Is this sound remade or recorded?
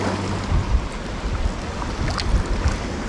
recorded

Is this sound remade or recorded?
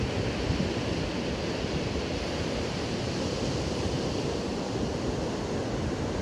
recorded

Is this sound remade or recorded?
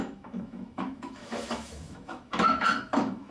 remade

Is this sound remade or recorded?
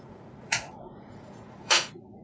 remade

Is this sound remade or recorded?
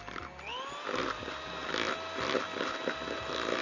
recorded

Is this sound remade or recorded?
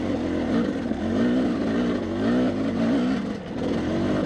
recorded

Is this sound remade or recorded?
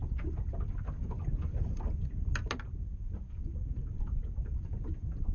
recorded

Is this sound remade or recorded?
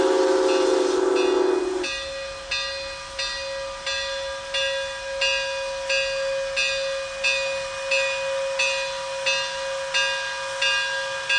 recorded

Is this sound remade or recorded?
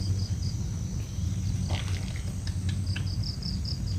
recorded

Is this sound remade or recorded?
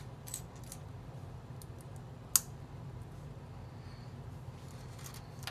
recorded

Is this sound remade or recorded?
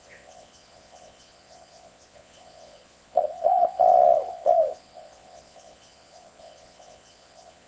remade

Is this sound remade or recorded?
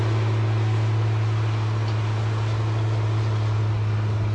recorded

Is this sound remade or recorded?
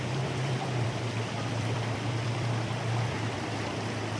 remade